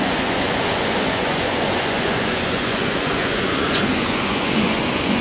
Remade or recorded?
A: remade